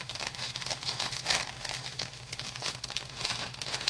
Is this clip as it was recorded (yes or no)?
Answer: no